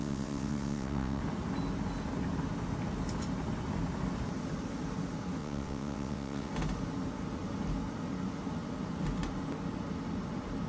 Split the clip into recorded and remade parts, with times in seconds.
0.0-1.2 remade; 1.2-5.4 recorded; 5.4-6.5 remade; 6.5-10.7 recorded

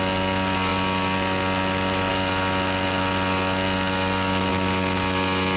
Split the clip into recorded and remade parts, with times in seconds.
0.0-5.6 recorded

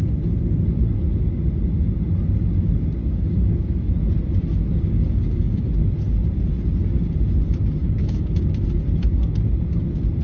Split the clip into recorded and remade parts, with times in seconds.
0.0-3.0 recorded; 3.0-4.0 remade; 4.0-4.7 recorded; 4.7-5.7 remade; 5.7-7.8 recorded; 7.8-8.6 remade; 8.6-10.2 recorded